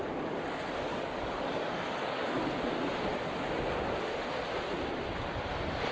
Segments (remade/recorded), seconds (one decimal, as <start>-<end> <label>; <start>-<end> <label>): 0.0-0.9 recorded; 0.9-2.4 remade; 2.4-5.9 recorded